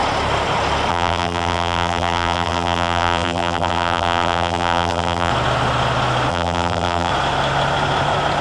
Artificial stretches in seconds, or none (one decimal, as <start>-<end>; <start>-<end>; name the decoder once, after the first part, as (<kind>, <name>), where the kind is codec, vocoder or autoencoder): 0.9-5.3 (vocoder, BigVGAN v2); 6.3-7.1